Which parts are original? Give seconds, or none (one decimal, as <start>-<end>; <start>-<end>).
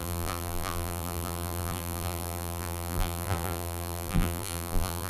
none